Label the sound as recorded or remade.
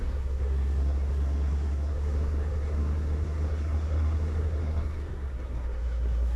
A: remade